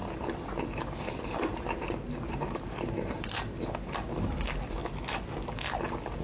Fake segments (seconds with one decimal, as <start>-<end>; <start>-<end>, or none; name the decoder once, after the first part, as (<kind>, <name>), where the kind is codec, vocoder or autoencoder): 0.0-3.7 (vocoder, BigVGAN v2)